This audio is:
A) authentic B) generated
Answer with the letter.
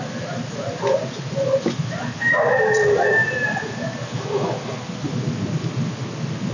A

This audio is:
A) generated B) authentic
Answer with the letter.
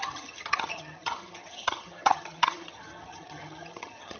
A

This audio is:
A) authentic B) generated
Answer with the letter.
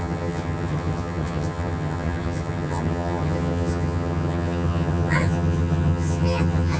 B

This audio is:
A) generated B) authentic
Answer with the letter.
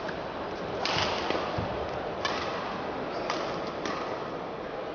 B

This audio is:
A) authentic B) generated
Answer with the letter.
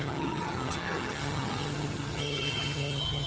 B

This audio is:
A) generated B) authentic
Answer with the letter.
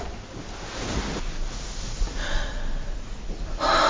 B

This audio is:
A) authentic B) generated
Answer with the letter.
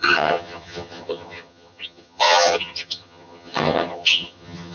B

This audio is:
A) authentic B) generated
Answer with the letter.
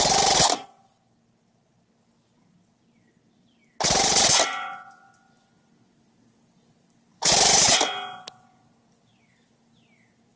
A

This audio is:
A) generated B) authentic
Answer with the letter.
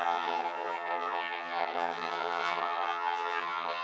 A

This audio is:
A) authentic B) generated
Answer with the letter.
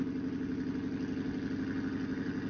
A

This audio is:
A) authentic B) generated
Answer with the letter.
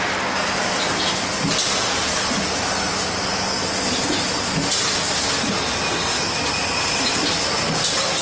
A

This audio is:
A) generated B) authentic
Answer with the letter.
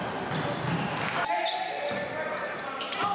B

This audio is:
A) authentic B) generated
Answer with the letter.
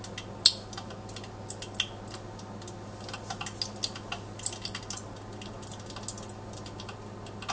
A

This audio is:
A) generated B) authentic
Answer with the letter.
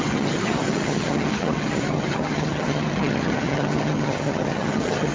A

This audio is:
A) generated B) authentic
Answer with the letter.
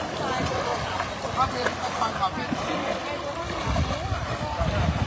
B